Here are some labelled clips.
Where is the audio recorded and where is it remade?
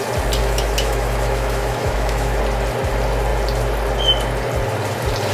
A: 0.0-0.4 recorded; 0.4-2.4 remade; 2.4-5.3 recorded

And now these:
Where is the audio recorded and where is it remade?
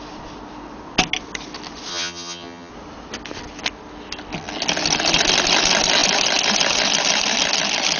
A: 0.0-1.9 recorded; 1.9-2.7 remade; 2.7-8.0 recorded